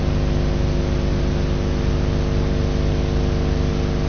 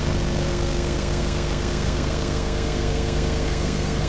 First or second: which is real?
first